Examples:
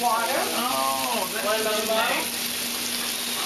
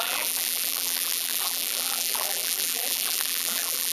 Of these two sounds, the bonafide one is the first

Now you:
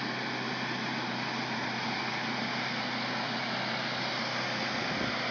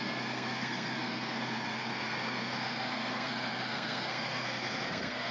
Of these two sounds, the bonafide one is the first